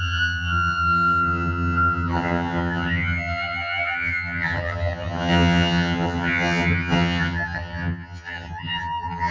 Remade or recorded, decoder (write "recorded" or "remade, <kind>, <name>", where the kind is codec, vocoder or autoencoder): remade, vocoder, HiFi-GAN